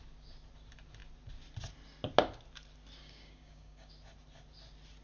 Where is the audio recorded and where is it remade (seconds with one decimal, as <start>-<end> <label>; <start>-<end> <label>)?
0.0-3.0 recorded; 3.0-3.9 remade; 3.9-5.0 recorded